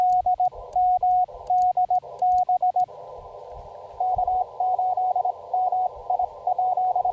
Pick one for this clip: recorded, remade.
recorded